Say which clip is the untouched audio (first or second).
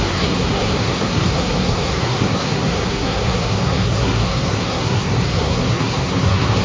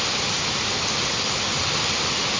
second